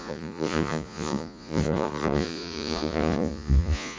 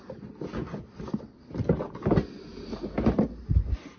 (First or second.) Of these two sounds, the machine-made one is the first